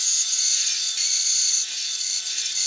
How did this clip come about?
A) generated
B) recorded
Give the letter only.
B